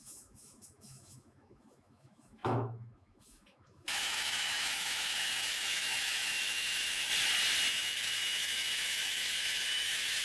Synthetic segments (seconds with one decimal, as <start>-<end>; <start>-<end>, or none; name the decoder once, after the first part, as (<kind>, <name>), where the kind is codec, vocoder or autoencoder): 0.0-7.1 (autoencoder, DAC-VAE); 7.7-10.2